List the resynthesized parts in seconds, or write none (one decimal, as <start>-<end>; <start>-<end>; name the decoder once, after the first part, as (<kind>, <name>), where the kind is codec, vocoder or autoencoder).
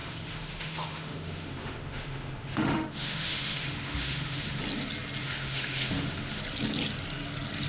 0.0-4.6 (autoencoder, DAC-VAE); 5.2-6.4